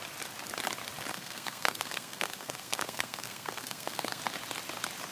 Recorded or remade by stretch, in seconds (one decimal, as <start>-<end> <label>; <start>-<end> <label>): 0.0-1.1 recorded; 1.1-4.2 remade; 4.2-5.1 recorded